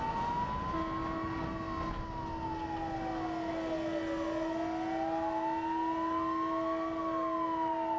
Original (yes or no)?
yes